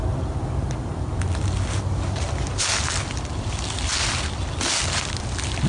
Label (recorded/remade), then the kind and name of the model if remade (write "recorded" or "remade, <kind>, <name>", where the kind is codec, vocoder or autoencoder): recorded